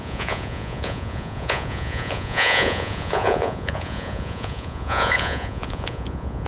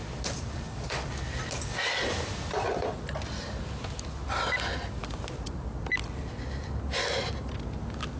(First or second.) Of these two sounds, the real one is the second